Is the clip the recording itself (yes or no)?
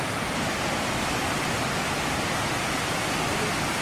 yes